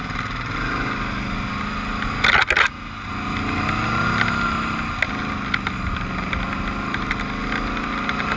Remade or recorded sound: recorded